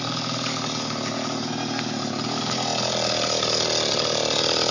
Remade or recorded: recorded